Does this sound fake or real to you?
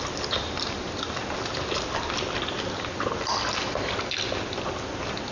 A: real